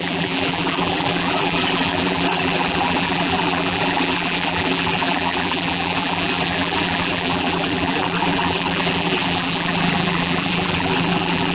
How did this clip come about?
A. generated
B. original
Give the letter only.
A